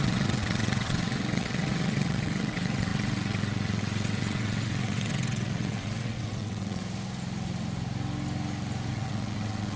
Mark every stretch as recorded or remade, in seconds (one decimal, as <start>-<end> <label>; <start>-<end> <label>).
0.0-6.8 remade; 6.8-8.9 recorded; 8.9-9.8 remade